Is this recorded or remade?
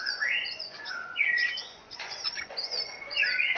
remade